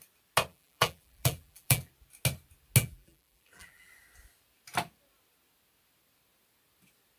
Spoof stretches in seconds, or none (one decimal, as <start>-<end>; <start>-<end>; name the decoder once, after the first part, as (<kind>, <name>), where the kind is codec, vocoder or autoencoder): 0.5-1.9 (vocoder, BigVGAN v2); 2.8-3.9